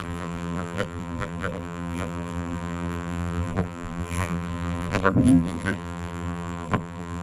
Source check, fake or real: fake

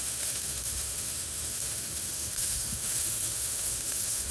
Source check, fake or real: fake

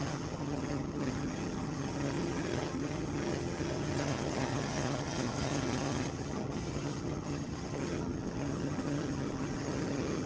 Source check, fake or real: fake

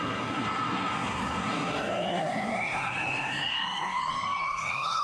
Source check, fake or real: fake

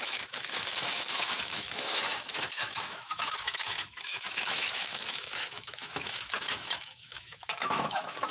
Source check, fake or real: fake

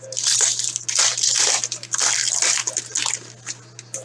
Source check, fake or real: real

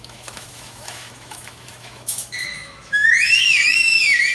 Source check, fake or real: fake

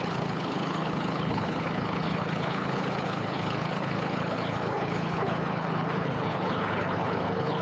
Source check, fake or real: fake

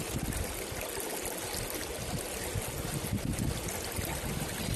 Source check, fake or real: real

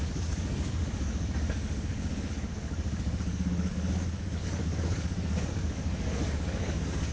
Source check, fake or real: fake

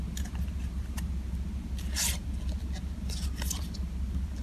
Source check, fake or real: real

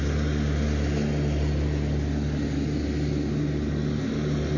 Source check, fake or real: real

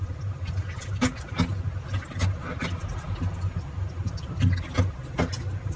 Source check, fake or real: real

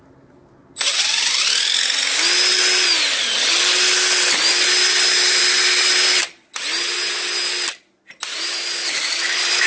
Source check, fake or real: real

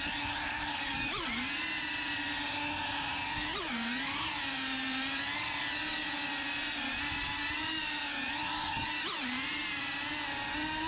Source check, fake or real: real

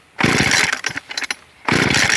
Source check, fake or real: real